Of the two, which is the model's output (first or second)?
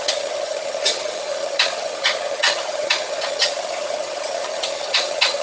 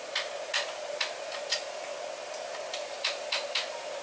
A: first